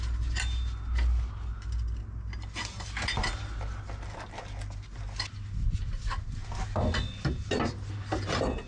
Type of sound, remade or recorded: recorded